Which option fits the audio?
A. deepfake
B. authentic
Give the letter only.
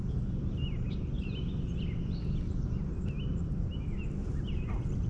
B